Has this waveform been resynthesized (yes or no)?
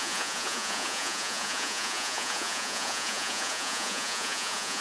yes